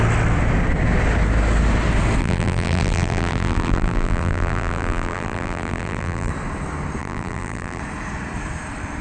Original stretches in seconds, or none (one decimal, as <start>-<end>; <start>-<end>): 0.0-2.2; 6.3-7.0; 7.8-9.0